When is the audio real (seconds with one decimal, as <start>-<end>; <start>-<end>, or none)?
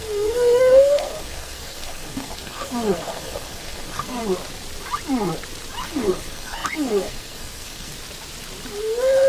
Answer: 4.2-5.8; 7.9-8.8